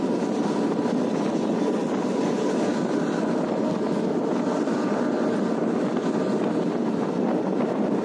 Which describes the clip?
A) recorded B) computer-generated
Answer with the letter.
A